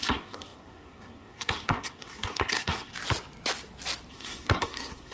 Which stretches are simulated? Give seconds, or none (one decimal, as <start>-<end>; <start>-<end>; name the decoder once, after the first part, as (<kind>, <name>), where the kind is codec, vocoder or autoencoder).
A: 0.0-2.9 (codec, SNAC); 4.1-5.1